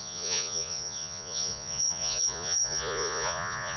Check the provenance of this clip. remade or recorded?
remade